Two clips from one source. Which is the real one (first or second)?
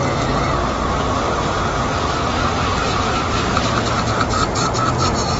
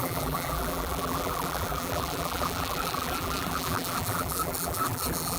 first